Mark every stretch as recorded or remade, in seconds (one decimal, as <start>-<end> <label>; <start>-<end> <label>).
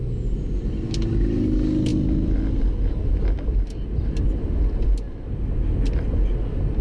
0.0-6.8 recorded